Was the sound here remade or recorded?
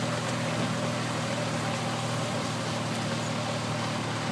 recorded